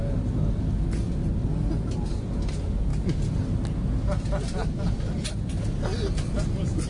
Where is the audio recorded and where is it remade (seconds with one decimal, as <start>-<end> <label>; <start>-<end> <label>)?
0.0-6.9 recorded